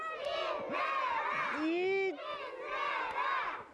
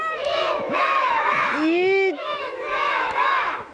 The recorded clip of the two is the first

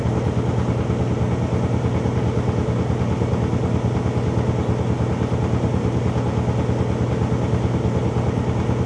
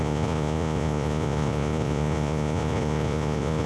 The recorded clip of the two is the first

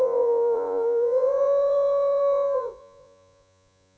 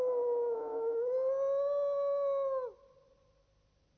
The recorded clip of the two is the second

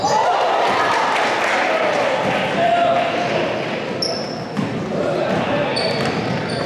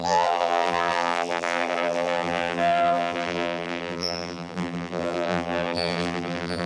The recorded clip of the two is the first